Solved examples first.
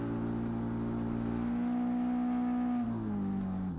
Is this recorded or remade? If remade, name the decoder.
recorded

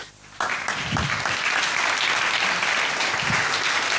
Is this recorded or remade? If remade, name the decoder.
recorded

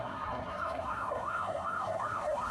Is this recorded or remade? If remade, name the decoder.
remade, codec, SNAC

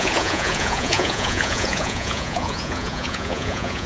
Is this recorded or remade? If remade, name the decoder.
remade, vocoder, Vocos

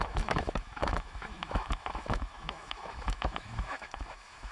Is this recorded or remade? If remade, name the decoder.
remade, autoencoder, DAC-VAE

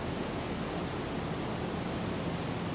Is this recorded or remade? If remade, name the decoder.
recorded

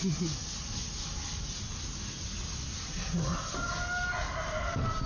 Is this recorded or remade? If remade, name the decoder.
recorded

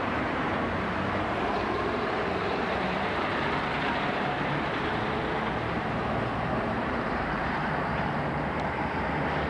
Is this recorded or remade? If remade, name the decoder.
remade, vocoder, BigVGAN v2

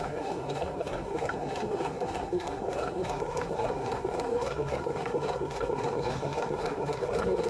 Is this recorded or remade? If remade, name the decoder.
remade, codec, SNAC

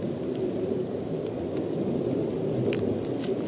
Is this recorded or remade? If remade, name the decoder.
recorded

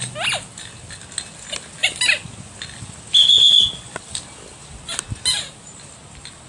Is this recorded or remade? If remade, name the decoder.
recorded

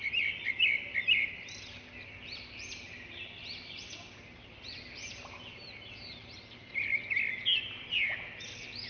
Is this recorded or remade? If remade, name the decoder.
recorded